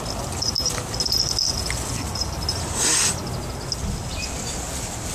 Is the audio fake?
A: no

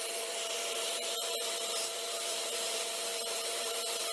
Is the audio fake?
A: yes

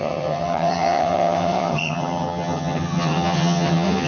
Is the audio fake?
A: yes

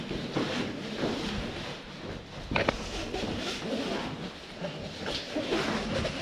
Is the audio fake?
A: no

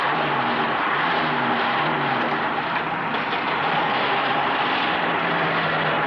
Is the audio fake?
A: no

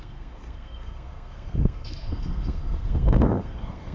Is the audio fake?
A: yes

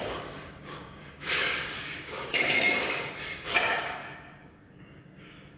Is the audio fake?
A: yes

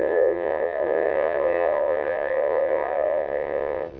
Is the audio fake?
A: yes